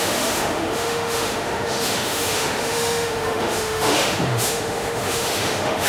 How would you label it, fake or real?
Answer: fake